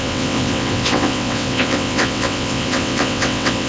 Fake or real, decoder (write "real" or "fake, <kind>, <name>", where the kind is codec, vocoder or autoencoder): fake, vocoder, WaveNeXt